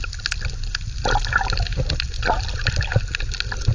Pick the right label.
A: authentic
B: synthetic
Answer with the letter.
A